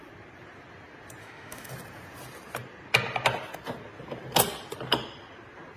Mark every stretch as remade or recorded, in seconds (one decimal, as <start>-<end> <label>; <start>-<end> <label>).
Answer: 0.0-1.2 recorded; 1.2-1.7 remade; 1.7-5.8 recorded